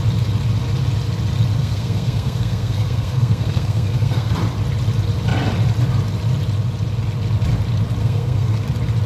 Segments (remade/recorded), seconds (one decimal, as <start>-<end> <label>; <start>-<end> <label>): 0.0-1.6 recorded; 1.6-4.3 remade; 4.3-8.0 recorded; 8.0-8.6 remade; 8.6-9.1 recorded